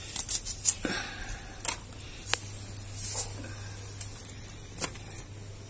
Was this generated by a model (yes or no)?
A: no